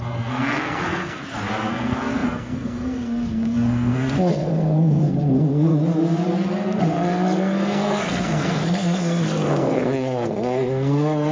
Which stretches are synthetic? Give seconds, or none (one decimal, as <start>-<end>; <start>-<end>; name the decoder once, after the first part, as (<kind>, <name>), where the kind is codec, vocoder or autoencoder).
0.0-1.2 (codec, SNAC); 1.7-5.7; 6.8-11.3